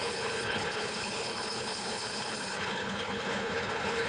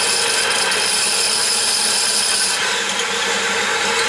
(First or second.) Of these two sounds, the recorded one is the second